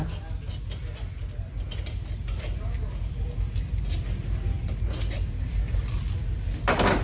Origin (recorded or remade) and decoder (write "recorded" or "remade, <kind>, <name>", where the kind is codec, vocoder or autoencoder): recorded